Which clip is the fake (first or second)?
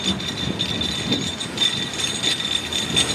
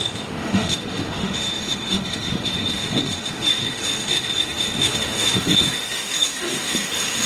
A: second